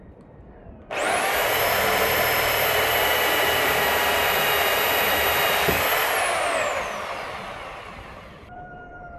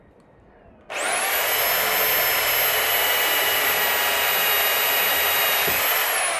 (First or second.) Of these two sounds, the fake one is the first